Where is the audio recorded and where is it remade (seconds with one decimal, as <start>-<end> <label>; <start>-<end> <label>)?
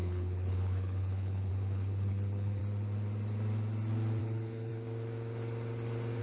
0.0-2.6 remade; 2.6-4.2 recorded; 4.2-4.7 remade; 4.7-6.2 recorded